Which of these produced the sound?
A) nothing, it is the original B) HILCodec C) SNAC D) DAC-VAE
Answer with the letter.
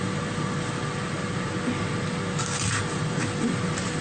A